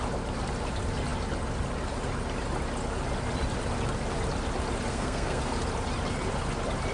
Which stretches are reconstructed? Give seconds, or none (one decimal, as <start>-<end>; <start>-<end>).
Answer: 4.9-5.4